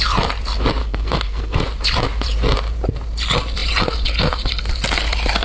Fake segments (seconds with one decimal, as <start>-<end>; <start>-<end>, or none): 0.8-1.6